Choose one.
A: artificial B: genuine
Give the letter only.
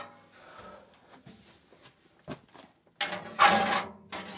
B